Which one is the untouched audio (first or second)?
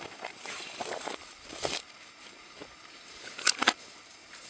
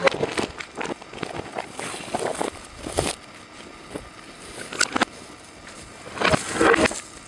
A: second